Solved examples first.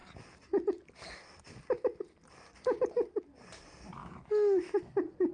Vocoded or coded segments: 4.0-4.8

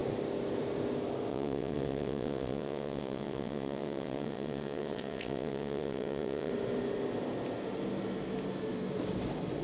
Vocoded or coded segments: 1.3-6.5

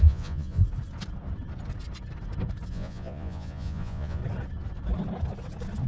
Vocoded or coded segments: 0.0-0.6; 2.7-4.2

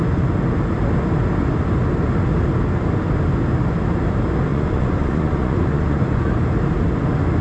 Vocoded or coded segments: 4.5-6.3

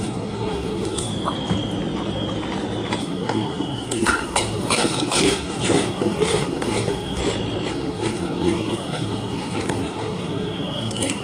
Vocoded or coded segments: 0.0-1.1; 3.0-7.2; 7.7-11.2

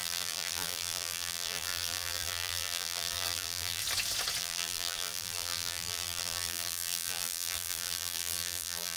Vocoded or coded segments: 0.0-3.8; 4.4-9.0

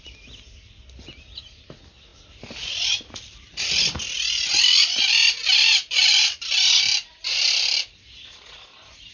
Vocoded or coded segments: 5.7-9.1